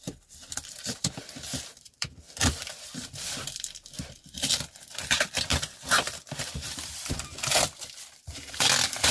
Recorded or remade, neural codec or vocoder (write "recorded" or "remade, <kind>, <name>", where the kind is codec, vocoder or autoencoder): remade, vocoder, BigVGAN v2